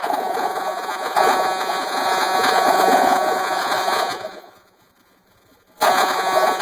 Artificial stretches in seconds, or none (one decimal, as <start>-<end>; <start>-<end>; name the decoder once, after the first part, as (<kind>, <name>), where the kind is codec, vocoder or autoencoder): 0.0-6.6 (vocoder, Vocos)